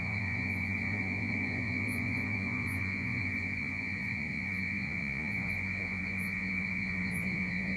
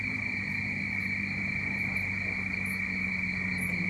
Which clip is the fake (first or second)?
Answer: first